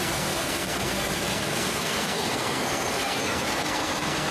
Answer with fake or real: fake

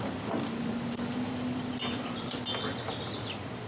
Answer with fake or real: real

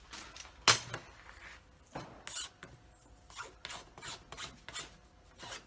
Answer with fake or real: real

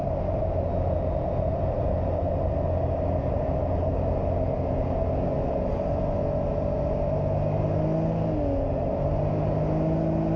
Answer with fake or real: real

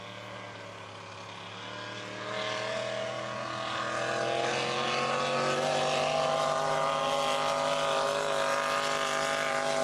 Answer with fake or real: real